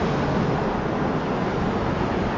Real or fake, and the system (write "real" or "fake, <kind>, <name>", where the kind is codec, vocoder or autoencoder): real